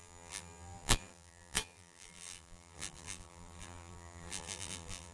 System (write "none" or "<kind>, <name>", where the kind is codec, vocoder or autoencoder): vocoder, BigVGAN v2